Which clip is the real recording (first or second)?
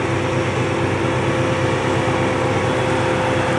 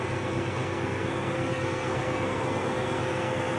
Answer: first